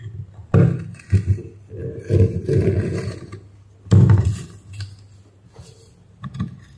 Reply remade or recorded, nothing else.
recorded